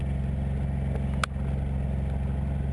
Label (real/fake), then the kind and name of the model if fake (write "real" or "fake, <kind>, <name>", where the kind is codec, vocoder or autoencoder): real